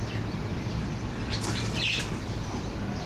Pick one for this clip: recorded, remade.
recorded